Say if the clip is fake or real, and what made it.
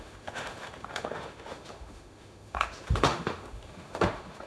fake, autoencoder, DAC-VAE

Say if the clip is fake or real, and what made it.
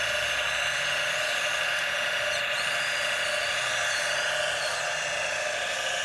real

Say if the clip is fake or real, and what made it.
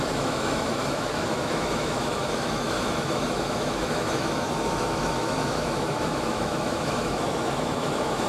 fake, autoencoder, DAC-VAE